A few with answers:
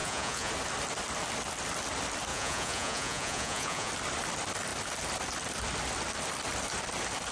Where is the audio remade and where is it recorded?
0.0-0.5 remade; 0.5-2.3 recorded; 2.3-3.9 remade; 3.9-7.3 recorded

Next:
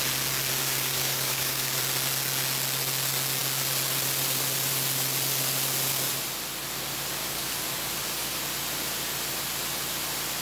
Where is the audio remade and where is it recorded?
0.0-0.6 recorded; 0.6-1.8 remade; 1.8-7.2 recorded; 7.2-8.4 remade; 8.4-10.4 recorded

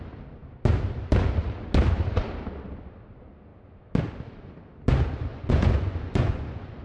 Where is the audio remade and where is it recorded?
0.0-5.3 recorded; 5.3-6.8 remade

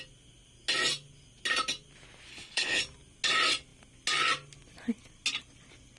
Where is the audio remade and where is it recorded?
0.0-2.3 recorded; 2.3-2.8 remade; 2.8-6.0 recorded

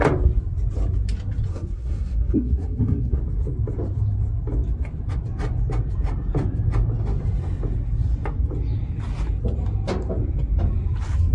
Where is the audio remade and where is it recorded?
0.0-1.5 recorded; 1.5-3.2 remade; 3.2-11.3 recorded

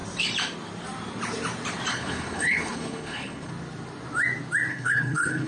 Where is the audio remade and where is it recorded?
0.0-1.9 recorded; 1.9-3.5 remade; 3.5-4.7 recorded; 4.7-5.5 remade